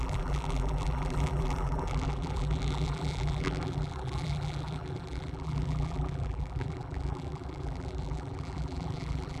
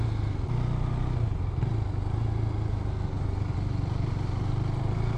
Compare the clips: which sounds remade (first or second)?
first